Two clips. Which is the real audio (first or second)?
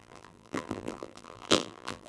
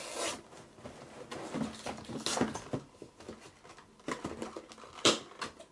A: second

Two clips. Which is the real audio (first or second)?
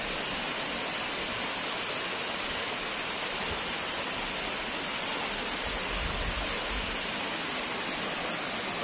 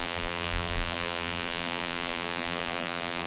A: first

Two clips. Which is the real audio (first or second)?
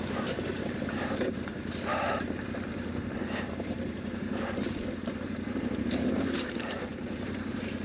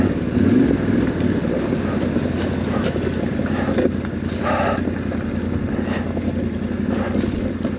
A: second